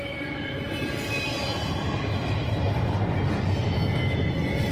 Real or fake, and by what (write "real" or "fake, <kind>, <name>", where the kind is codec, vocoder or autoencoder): real